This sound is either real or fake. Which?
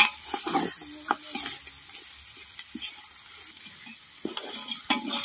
real